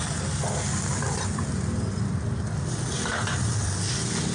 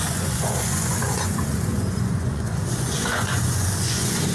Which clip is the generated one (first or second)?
second